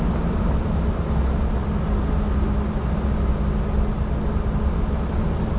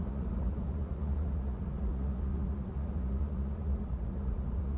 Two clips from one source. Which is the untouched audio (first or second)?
first